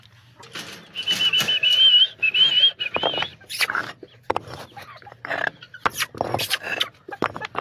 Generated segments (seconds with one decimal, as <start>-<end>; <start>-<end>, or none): 3.4-5.0